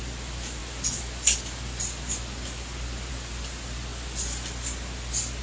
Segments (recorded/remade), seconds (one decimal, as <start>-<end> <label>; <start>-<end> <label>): 0.0-5.4 recorded